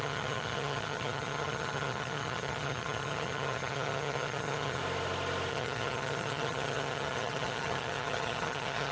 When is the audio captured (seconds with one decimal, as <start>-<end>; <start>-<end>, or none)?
4.8-5.5